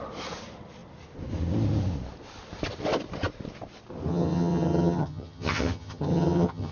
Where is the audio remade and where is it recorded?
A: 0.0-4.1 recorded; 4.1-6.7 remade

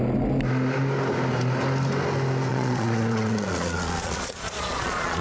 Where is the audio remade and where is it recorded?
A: 0.0-2.5 recorded; 2.5-5.2 remade

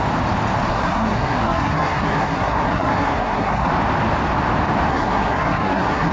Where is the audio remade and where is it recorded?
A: 0.0-0.7 recorded; 0.7-3.7 remade; 3.7-4.9 recorded; 4.9-6.1 remade

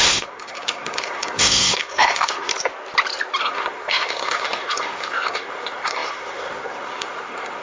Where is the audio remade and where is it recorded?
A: 0.0-2.5 remade; 2.5-3.4 recorded; 3.4-7.6 remade

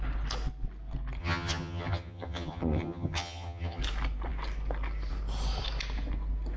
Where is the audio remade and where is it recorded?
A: 0.0-1.2 recorded; 1.2-3.8 remade; 3.8-6.6 recorded

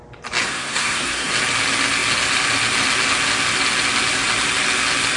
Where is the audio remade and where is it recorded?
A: 0.0-0.4 recorded; 0.4-1.3 remade; 1.3-5.2 recorded